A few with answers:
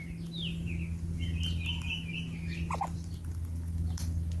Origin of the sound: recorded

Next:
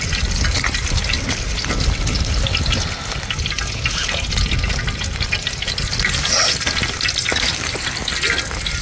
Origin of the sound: recorded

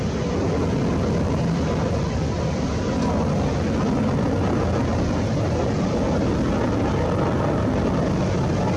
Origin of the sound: recorded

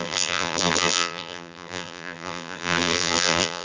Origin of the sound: remade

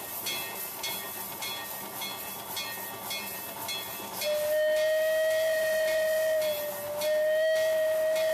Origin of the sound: recorded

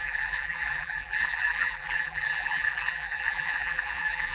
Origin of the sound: remade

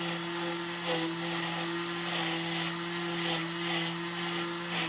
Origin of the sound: recorded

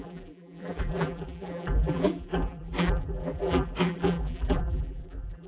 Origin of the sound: remade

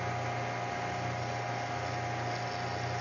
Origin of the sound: recorded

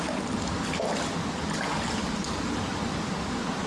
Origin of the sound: recorded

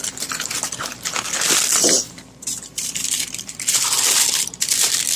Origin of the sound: remade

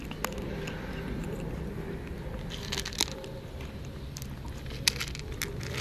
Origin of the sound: recorded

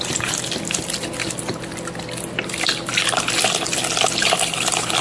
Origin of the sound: remade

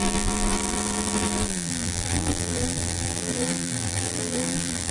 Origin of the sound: remade